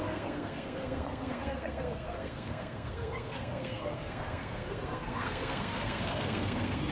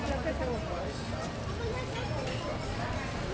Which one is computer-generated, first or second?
first